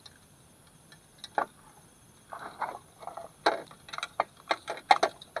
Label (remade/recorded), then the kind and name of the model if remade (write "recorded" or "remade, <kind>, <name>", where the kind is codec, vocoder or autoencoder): recorded